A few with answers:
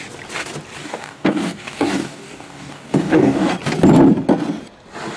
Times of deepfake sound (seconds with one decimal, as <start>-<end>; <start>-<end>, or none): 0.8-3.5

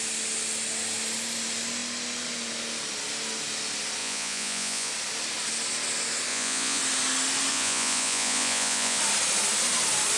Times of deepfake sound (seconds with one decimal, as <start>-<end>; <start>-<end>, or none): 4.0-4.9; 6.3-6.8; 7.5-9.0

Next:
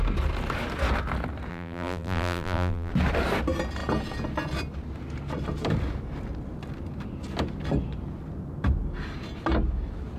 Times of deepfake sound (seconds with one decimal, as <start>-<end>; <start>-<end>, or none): 1.5-2.9

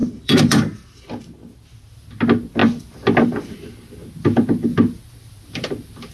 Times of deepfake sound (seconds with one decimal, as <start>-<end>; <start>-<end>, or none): 0.0-1.3